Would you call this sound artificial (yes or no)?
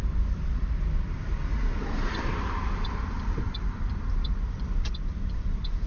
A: yes